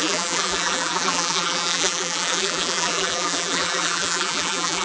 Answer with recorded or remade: remade